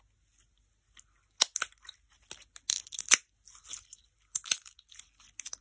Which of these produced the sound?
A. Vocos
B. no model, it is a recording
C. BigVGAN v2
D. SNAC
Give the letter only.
B